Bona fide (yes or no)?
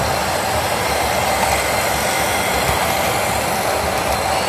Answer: yes